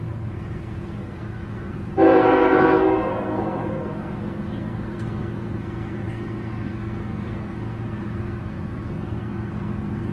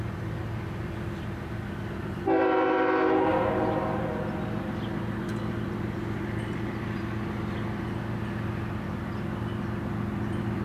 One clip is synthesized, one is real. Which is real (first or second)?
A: second